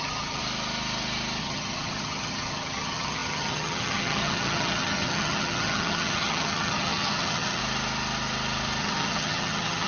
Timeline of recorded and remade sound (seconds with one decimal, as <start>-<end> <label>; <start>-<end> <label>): 0.0-0.4 remade; 0.4-1.4 recorded; 1.4-7.6 remade; 7.6-8.8 recorded; 8.8-9.9 remade